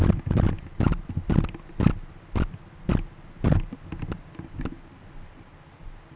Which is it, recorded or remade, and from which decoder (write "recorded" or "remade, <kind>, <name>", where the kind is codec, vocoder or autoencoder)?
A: recorded